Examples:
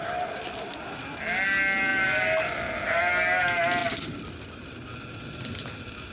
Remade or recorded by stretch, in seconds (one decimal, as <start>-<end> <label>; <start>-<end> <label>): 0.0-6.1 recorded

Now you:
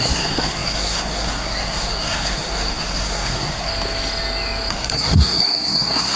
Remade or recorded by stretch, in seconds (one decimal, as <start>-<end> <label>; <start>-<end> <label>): 0.0-3.7 remade; 3.7-4.7 recorded; 4.7-6.2 remade

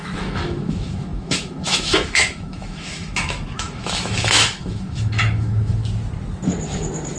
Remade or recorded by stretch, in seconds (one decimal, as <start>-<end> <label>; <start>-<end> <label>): 0.0-5.8 remade; 5.8-7.2 recorded

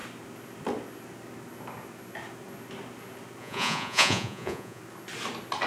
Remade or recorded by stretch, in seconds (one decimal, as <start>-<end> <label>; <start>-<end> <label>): 0.0-3.4 recorded; 3.4-4.8 remade; 4.8-5.7 recorded

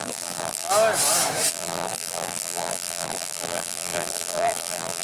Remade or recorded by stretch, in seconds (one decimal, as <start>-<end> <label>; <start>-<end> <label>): 0.0-0.7 remade; 0.7-1.5 recorded; 1.5-5.0 remade